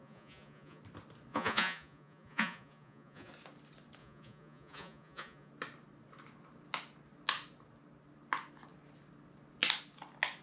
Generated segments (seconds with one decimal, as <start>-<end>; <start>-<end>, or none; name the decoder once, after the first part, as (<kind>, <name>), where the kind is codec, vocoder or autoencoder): 0.0-0.8 (vocoder, Vocos); 1.3-3.3; 4.0-5.5